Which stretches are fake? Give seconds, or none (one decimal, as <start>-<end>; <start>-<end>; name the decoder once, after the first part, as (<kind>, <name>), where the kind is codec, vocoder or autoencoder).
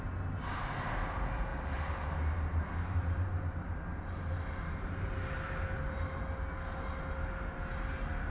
1.5-6.2 (vocoder, BigVGAN v2)